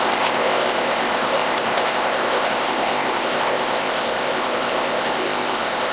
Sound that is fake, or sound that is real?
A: fake